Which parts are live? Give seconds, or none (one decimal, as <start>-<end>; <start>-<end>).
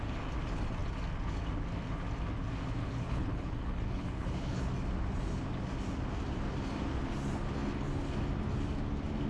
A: 0.0-2.8; 4.6-9.3